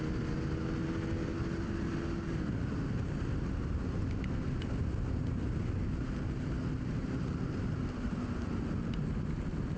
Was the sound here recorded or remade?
recorded